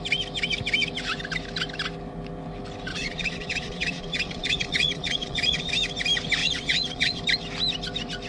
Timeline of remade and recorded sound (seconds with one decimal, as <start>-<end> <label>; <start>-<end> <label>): 0.0-2.9 recorded; 2.9-5.7 remade; 5.7-6.4 recorded; 6.4-7.2 remade; 7.2-8.3 recorded